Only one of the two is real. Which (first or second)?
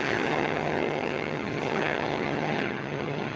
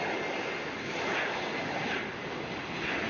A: second